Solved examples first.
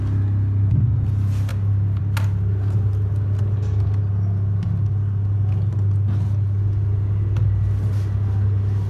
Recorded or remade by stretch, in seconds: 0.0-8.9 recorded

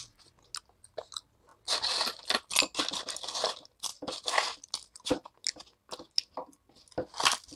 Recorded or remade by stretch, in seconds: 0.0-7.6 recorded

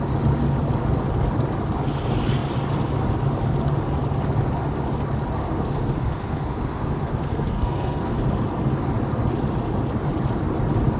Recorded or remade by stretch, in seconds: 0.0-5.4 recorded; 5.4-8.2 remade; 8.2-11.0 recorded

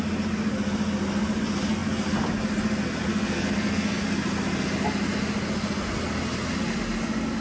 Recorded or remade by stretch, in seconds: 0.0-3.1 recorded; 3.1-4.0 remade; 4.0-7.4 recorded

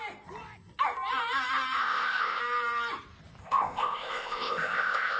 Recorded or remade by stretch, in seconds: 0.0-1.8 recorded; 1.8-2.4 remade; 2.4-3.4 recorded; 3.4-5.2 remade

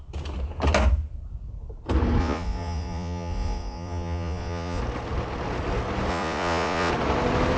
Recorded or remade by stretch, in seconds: 0.0-2.2 recorded; 2.2-4.8 remade; 4.8-6.1 recorded; 6.1-6.9 remade; 6.9-7.6 recorded

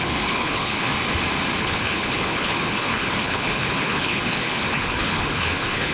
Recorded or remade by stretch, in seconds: 0.0-0.9 remade; 0.9-1.6 recorded; 1.6-5.9 remade

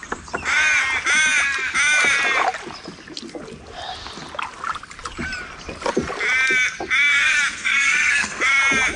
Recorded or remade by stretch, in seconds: 0.0-7.5 recorded; 7.5-8.4 remade; 8.4-9.0 recorded